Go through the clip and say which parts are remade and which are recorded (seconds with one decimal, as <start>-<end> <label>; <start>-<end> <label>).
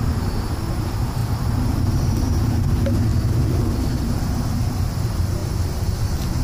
0.0-3.1 remade; 3.1-4.1 recorded; 4.1-6.4 remade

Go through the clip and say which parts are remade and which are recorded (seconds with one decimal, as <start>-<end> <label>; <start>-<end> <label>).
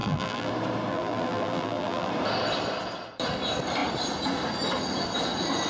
0.0-0.5 remade; 0.5-0.9 recorded; 0.9-2.1 remade; 2.1-5.7 recorded